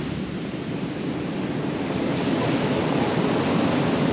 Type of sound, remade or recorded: recorded